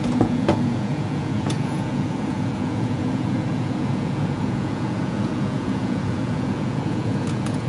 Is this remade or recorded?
remade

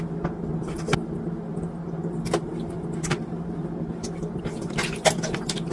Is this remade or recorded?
recorded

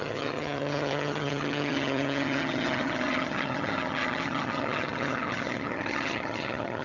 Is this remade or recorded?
remade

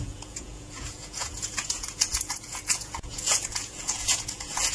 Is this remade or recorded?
remade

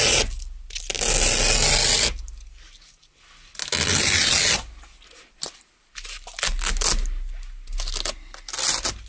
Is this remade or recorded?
recorded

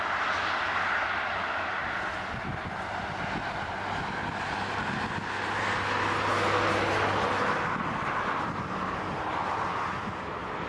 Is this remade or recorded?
recorded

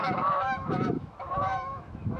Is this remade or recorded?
remade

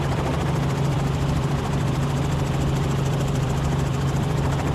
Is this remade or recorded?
remade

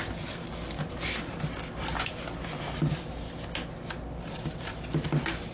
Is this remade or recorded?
recorded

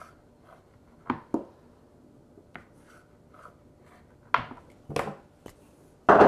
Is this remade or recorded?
recorded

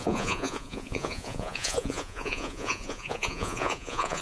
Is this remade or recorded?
remade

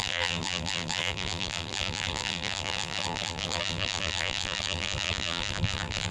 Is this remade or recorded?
remade